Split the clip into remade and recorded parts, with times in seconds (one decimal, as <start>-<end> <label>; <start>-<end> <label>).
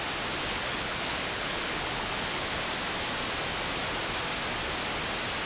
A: 0.0-0.4 recorded; 0.4-2.6 remade; 2.6-5.5 recorded